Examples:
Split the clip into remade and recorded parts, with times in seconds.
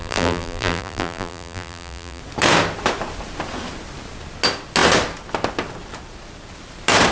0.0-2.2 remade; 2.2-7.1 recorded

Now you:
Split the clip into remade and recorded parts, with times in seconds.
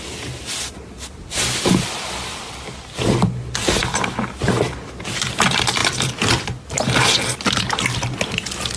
0.0-3.8 remade; 3.8-4.4 recorded; 4.4-8.8 remade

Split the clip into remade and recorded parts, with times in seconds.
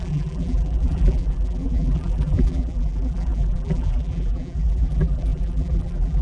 0.0-6.2 remade